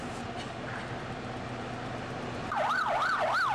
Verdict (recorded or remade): recorded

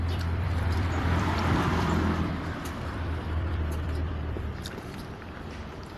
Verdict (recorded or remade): remade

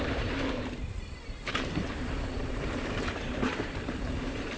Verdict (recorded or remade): remade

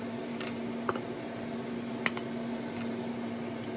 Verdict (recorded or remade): recorded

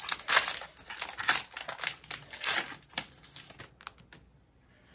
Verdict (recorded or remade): recorded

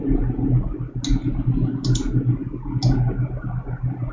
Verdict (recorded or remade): recorded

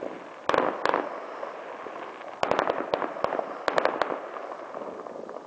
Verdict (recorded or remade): recorded